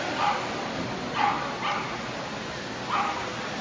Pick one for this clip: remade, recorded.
recorded